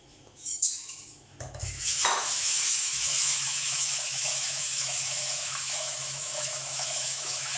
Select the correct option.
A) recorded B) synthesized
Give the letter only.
B